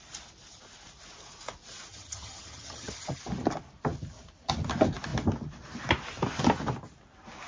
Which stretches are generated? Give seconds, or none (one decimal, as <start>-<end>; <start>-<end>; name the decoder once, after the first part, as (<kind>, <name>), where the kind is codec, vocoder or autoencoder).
1.9-3.2 (vocoder, HiFi-GAN)